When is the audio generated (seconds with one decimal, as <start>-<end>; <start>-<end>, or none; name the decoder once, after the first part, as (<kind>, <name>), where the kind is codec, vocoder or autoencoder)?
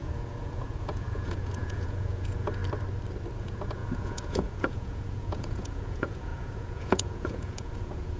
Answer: 0.0-2.6 (vocoder, Vocos); 3.4-8.2